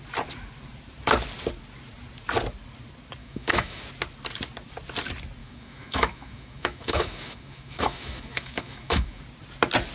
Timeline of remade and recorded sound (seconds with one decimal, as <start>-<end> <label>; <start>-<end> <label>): 0.0-3.2 recorded; 3.2-3.8 remade; 3.8-5.4 recorded; 5.4-9.2 remade; 9.2-9.9 recorded